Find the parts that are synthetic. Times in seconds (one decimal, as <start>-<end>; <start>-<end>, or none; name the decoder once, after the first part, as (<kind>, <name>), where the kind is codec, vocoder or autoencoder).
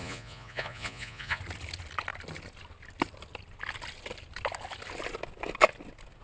0.0-1.4 (vocoder, Vocos)